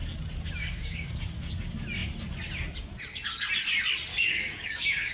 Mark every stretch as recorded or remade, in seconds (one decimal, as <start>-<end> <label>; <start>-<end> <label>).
0.0-0.6 recorded; 0.6-1.3 remade; 1.3-4.1 recorded; 4.1-5.1 remade